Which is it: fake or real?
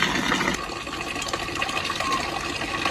real